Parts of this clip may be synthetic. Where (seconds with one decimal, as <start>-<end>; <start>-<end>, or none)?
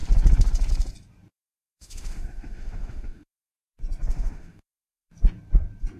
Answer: 1.3-3.5; 4.1-5.1